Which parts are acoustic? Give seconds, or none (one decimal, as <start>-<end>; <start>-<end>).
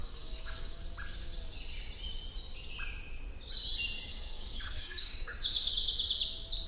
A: 0.8-4.1; 5.7-6.7